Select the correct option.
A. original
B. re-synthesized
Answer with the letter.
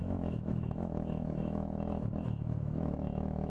B